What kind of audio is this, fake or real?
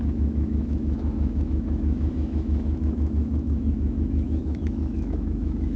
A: fake